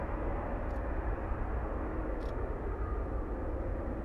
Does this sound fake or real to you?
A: real